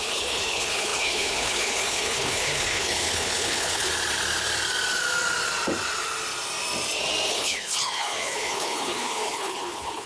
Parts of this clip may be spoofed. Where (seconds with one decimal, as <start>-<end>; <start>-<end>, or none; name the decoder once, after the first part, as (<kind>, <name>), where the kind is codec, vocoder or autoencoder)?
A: 0.0-3.9 (codec, HILCodec); 7.3-10.1